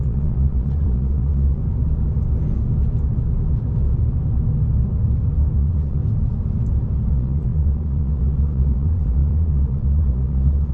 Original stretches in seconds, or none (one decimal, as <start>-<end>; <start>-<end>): 1.6-5.6; 6.0-7.1